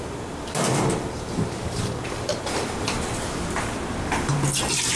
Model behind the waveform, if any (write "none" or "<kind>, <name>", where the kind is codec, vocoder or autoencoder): vocoder, BigVGAN v2